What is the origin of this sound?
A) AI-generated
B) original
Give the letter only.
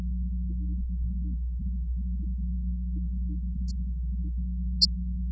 B